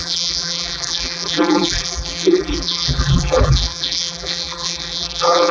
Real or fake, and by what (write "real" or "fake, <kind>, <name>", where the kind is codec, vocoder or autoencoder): fake, vocoder, BigVGAN v2